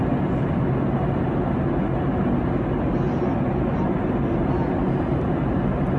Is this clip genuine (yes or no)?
yes